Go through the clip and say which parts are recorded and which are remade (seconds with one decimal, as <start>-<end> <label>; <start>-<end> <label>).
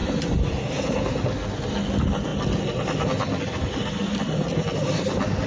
0.0-5.5 recorded